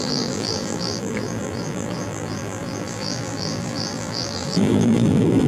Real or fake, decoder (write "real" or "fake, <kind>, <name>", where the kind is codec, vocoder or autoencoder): fake, vocoder, BigVGAN v2